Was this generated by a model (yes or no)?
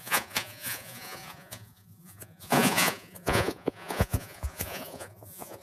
yes